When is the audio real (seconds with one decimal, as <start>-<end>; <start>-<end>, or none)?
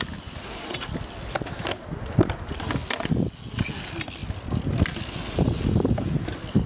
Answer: 0.0-6.7